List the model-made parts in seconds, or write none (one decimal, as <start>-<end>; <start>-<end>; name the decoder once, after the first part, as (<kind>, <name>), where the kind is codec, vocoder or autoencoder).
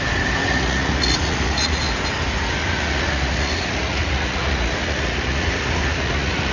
0.4-1.8 (vocoder, Vocos); 2.6-6.5